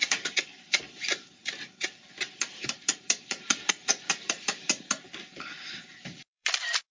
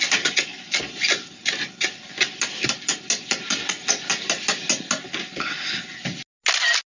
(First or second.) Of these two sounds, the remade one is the first